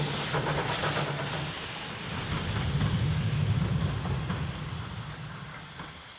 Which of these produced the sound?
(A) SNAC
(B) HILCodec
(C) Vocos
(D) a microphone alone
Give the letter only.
D